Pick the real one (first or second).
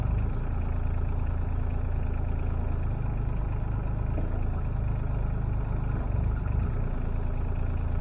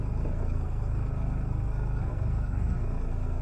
first